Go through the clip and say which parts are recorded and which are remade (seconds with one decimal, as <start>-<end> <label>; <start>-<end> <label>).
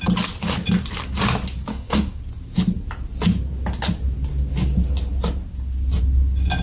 0.0-1.7 recorded; 1.7-2.2 remade; 2.2-6.6 recorded